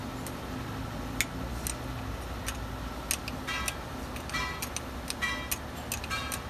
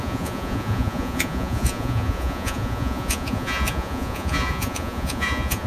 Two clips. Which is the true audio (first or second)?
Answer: first